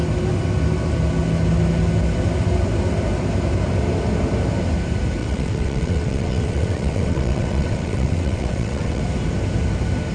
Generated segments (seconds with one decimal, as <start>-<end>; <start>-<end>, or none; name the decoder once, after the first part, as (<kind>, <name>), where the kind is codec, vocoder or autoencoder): 5.2-9.0 (vocoder, WaveNeXt)